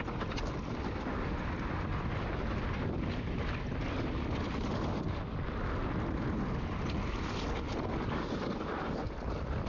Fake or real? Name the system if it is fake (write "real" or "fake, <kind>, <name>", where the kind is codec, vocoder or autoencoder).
real